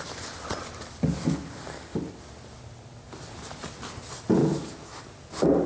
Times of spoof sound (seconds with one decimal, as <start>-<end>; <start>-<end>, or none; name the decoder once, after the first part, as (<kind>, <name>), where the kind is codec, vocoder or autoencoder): 4.4-5.0 (autoencoder, DAC-VAE)